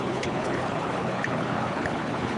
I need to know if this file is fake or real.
fake